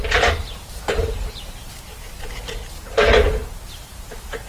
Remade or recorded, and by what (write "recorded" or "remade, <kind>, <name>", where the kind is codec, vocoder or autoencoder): remade, vocoder, BigVGAN v2